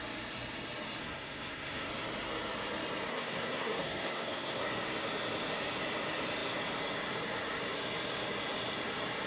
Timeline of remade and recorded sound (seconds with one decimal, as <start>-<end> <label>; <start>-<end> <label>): 0.0-1.0 recorded; 1.0-1.9 remade; 1.9-3.1 recorded; 3.1-4.6 remade; 4.6-9.3 recorded